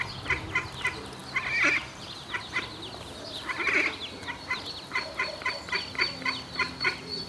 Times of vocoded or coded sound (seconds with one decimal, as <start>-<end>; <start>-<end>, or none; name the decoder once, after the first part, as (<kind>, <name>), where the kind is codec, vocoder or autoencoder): none